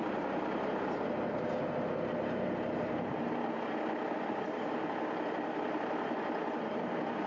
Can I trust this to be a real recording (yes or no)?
yes